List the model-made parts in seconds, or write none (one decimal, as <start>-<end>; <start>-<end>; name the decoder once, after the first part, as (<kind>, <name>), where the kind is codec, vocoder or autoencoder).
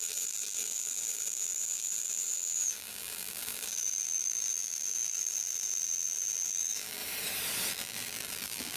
0.0-7.0 (vocoder, BigVGAN v2); 7.7-8.8